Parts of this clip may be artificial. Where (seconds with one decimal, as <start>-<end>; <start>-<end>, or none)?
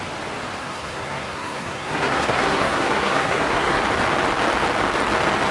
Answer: 0.6-3.8